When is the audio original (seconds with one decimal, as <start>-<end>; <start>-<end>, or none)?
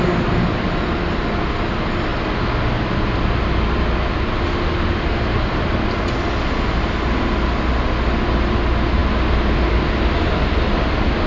0.0-11.3